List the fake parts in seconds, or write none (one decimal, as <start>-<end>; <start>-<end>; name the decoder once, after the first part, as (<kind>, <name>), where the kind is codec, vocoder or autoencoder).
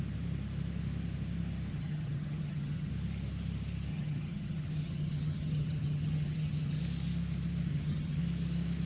1.7-2.9 (vocoder, HiFi-GAN); 3.9-6.8; 7.7-8.2